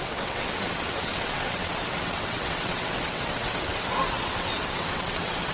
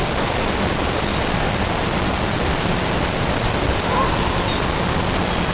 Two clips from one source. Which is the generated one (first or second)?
first